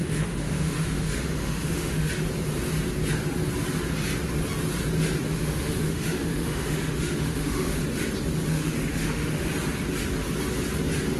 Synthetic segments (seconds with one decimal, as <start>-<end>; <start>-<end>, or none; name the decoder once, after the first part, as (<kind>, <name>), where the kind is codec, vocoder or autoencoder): 0.0-2.1 (autoencoder, DAC-VAE); 5.3-7.8; 8.5-9.5